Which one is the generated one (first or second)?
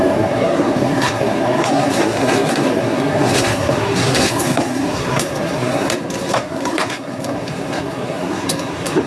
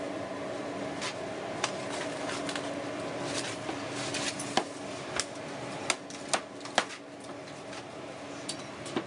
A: first